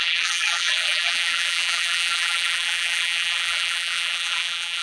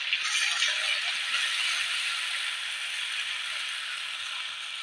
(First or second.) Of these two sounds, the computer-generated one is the first